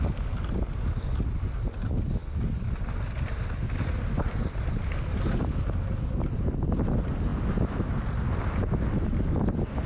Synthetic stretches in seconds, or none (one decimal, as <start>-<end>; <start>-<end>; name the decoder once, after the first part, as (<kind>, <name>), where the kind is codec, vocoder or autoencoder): none